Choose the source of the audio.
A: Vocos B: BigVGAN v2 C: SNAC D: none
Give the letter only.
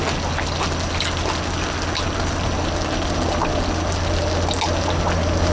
D